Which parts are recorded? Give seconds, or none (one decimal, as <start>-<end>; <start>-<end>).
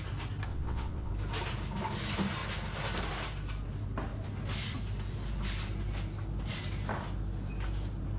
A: 0.0-0.5; 1.1-8.2